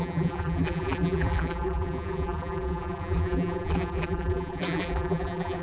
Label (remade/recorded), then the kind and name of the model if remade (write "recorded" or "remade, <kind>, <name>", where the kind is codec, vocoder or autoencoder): remade, vocoder, BigVGAN v2